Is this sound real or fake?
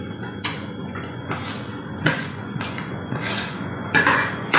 fake